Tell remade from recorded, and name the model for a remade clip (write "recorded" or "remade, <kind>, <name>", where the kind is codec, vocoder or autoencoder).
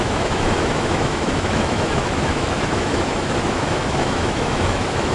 remade, autoencoder, DAC-VAE